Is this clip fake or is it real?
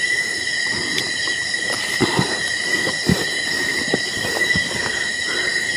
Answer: fake